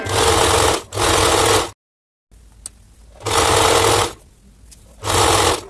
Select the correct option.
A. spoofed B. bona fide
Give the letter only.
B